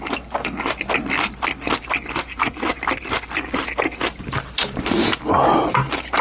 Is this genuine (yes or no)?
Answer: yes